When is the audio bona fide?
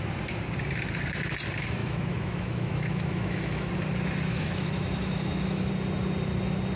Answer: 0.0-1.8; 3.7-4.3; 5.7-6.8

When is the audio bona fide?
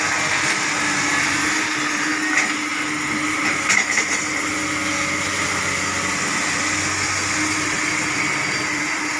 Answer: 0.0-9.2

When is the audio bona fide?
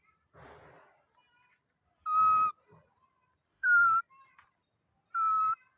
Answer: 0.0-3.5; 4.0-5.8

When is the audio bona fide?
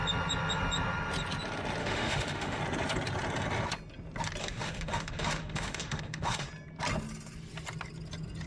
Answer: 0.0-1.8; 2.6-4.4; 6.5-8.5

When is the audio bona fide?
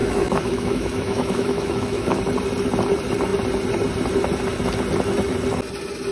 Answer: 2.2-6.1